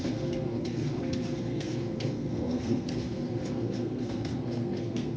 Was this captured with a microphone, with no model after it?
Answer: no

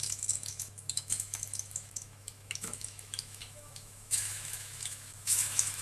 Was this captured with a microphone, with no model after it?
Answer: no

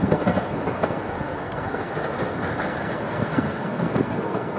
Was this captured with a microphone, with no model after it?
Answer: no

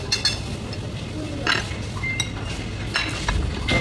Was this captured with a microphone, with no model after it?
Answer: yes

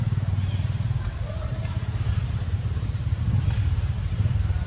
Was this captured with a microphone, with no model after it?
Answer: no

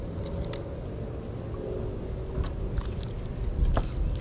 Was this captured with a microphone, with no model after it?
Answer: yes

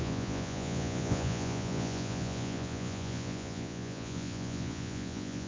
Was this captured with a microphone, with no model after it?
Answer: no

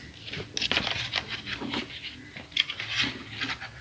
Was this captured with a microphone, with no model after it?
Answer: yes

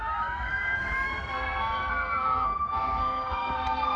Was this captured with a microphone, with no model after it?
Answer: no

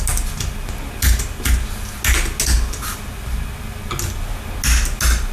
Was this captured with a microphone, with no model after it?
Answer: yes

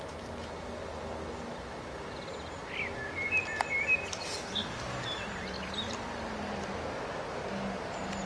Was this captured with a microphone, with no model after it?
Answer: yes